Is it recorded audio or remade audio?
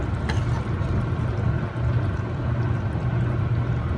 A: recorded